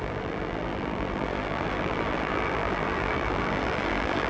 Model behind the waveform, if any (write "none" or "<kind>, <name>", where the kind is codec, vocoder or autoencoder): vocoder, BigVGAN v2